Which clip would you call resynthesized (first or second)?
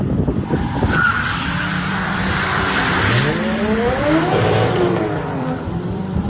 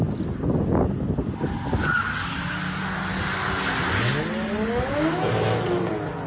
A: first